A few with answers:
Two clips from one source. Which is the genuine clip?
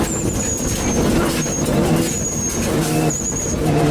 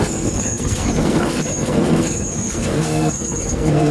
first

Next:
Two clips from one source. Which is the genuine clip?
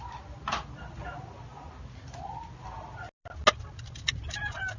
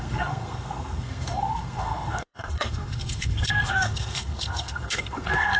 first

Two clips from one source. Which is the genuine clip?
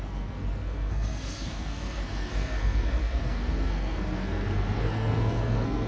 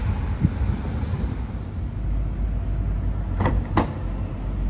second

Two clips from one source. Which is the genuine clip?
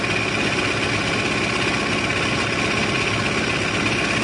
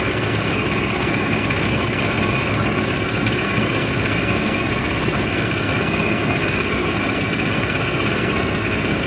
first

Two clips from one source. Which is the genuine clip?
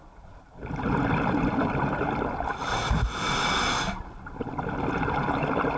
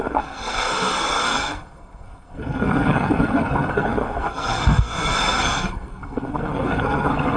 first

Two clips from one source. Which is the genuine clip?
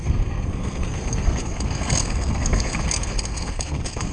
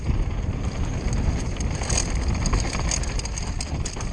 second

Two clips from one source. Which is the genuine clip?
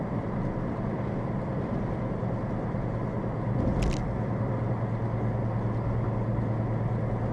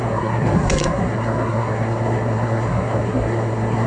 first